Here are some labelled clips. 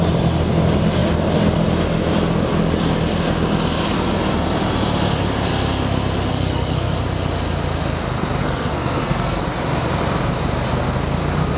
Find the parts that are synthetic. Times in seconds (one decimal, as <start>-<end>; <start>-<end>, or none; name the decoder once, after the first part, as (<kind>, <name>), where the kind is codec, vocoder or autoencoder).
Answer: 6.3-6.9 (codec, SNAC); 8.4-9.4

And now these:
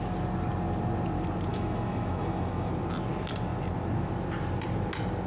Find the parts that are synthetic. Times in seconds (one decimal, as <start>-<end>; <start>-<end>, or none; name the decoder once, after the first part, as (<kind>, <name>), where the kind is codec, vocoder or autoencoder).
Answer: 1.5-2.7 (autoencoder, DAC-VAE)

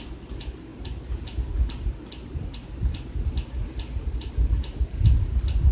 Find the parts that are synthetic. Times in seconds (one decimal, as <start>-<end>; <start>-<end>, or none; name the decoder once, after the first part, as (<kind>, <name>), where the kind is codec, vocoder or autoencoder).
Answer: 0.7-2.8 (vocoder, BigVGAN v2)

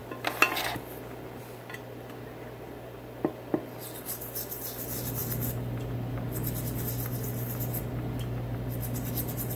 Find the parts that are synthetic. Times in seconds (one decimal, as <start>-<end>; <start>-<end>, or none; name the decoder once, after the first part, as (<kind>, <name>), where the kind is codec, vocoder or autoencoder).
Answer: none